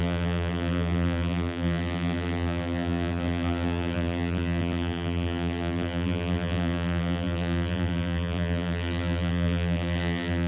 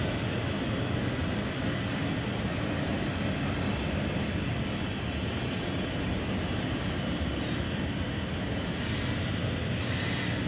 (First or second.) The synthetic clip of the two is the first